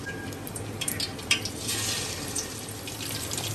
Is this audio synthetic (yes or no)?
no